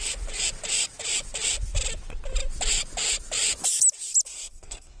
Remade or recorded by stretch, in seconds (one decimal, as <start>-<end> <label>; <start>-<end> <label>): 0.0-4.3 recorded; 4.3-5.0 remade